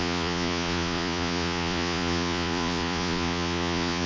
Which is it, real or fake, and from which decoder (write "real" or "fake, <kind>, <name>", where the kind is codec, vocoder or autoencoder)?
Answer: fake, vocoder, Vocos